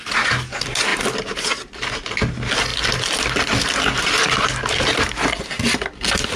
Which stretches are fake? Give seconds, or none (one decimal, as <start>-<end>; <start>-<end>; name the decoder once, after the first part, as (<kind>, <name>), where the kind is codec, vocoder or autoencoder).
none